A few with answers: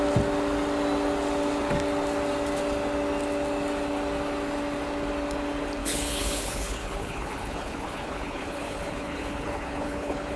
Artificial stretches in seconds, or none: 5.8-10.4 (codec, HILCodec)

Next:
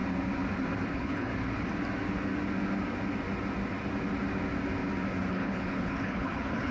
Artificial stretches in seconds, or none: 0.9-1.3 (codec, HILCodec); 5.3-6.7

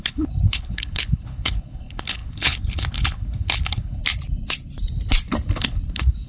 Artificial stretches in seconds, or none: 0.0-4.0 (codec, HILCodec); 5.5-6.3

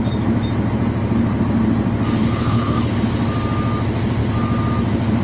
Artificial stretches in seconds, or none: 2.2-2.9 (codec, HILCodec)

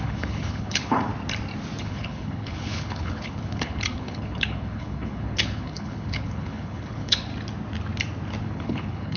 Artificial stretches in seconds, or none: 0.0-1.1 (codec, HILCodec); 1.8-7.3; 8.4-9.2

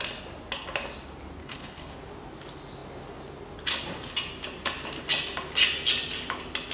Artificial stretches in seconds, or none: 1.4-1.9 (codec, HILCodec)